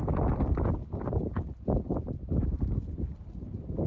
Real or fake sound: real